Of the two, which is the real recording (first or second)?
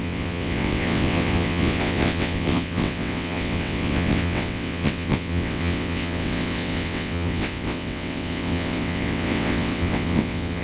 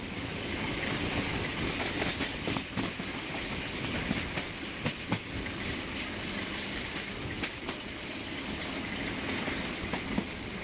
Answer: second